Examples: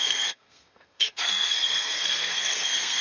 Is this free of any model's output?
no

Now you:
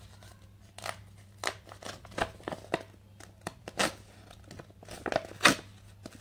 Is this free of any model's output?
yes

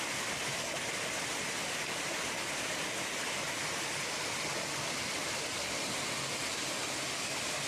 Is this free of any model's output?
yes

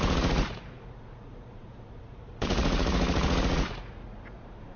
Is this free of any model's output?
no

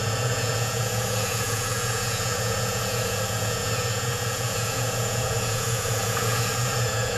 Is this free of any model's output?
no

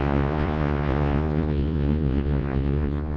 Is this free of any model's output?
no